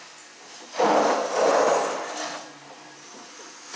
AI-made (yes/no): no